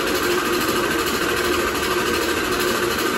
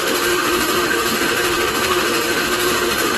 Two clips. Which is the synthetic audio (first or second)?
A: second